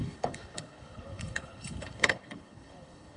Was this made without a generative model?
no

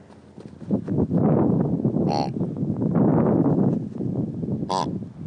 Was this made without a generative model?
yes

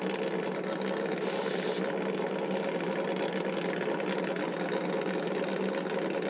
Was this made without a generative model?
yes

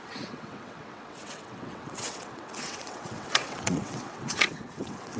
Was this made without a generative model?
no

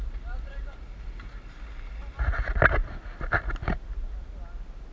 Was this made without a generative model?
yes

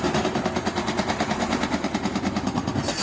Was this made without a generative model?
yes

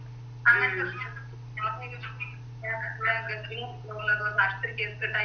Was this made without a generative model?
yes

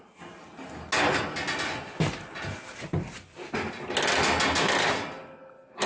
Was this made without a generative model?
yes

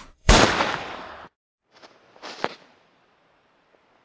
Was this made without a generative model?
no